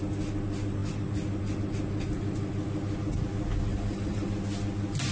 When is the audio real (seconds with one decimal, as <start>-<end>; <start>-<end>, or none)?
0.0-3.7; 4.3-5.1